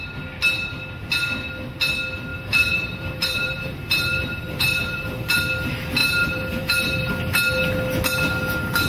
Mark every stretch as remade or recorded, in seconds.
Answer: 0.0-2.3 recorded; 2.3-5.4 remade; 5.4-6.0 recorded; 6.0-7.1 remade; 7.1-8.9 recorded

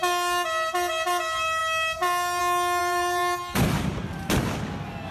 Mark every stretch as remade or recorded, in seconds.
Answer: 0.0-2.8 recorded; 2.8-3.9 remade; 3.9-5.1 recorded

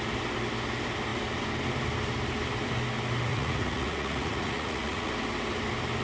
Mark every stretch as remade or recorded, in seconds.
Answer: 0.0-3.3 recorded; 3.3-5.1 remade; 5.1-6.0 recorded

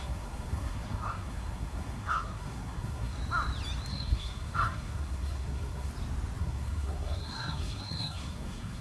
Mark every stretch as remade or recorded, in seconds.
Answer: 0.0-3.2 remade; 3.2-3.9 recorded; 3.9-5.9 remade; 5.9-6.4 recorded; 6.4-8.8 remade